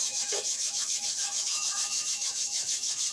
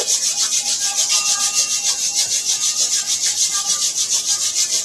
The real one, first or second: second